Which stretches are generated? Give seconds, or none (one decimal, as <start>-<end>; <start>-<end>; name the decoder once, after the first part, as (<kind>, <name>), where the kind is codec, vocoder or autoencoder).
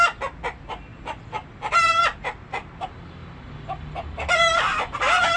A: 2.1-2.8 (vocoder, BigVGAN v2); 3.2-5.4